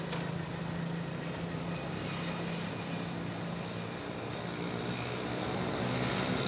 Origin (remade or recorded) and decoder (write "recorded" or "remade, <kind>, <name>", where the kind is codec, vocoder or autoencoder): recorded